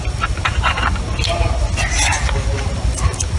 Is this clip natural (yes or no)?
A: yes